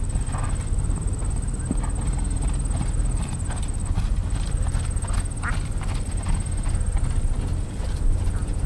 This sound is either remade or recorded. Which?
recorded